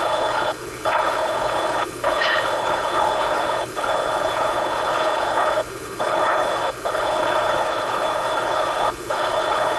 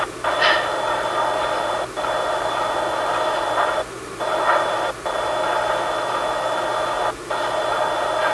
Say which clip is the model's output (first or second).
first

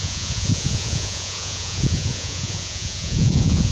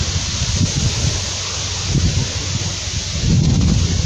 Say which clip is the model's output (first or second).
first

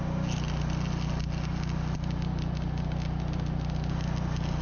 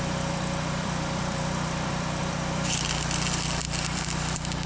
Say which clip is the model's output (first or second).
second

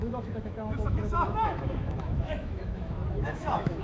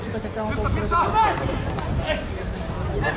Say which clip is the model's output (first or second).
first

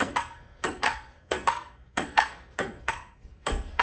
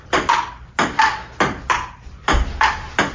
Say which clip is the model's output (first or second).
first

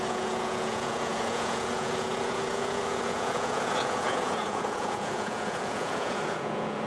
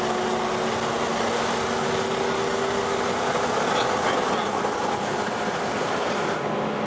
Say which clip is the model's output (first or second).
first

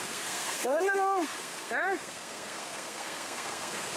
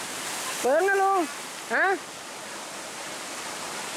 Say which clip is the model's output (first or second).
first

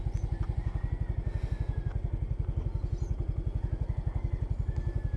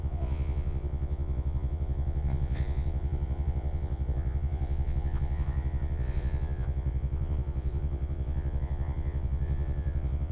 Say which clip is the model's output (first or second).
second